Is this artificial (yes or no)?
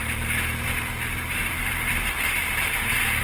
yes